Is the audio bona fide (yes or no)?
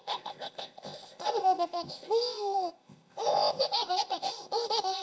no